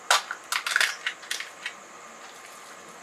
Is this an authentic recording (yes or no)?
yes